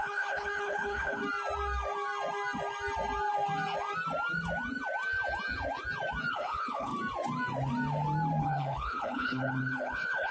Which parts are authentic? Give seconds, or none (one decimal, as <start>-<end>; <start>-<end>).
1.2-6.3; 6.9-8.4